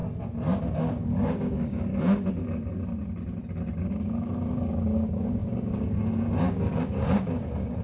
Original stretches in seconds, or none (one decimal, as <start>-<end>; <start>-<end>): 0.0-0.6; 1.9-3.8